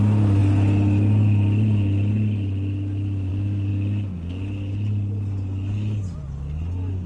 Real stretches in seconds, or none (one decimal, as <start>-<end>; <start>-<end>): 0.0-7.1